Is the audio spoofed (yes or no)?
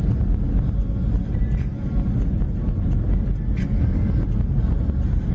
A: no